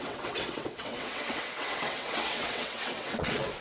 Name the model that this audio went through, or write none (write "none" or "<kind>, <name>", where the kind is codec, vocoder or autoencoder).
vocoder, WaveNeXt